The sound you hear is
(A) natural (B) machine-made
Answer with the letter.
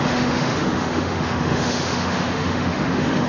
B